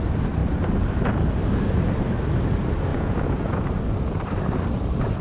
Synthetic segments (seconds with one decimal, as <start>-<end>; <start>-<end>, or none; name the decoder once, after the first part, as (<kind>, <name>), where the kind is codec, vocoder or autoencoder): 2.9-3.6 (vocoder, Vocos)